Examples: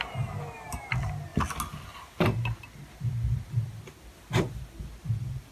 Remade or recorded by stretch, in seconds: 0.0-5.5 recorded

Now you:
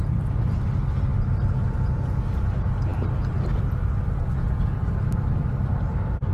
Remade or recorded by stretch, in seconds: 0.0-6.3 recorded

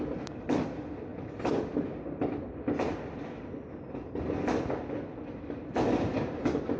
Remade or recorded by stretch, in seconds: 0.0-6.8 recorded

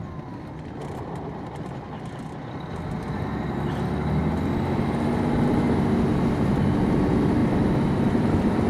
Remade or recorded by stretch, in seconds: 0.0-7.4 recorded; 7.4-8.7 remade